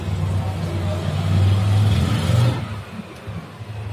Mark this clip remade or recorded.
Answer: recorded